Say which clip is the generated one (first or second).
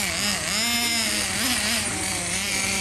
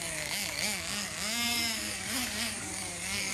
second